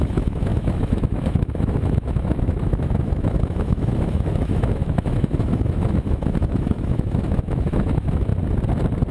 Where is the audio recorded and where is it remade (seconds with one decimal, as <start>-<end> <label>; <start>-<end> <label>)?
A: 0.0-8.3 remade; 8.3-9.1 recorded